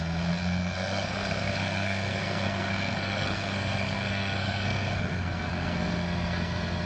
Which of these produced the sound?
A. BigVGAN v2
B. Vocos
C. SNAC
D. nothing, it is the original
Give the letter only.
C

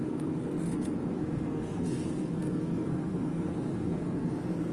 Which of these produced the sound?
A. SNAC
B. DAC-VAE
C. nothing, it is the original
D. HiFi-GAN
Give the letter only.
A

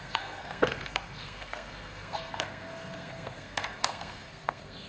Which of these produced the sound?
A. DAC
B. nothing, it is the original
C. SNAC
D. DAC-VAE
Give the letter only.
C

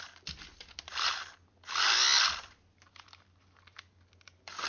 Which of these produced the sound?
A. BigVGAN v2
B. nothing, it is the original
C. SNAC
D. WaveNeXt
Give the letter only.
B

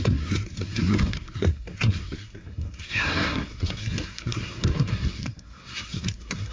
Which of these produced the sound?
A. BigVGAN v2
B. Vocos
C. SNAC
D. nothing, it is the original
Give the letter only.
C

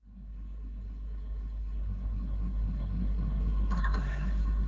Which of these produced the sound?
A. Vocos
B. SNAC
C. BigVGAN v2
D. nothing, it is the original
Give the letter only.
B